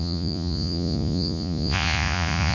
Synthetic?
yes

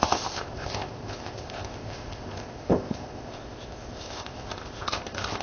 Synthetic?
yes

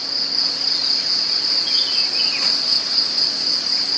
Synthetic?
no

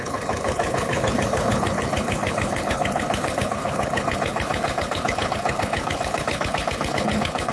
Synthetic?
yes